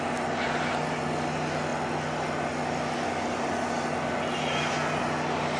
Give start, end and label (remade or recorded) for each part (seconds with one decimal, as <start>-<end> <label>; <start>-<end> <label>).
0.0-5.6 recorded